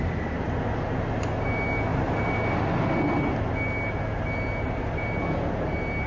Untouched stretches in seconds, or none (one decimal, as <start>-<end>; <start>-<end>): 0.0-6.1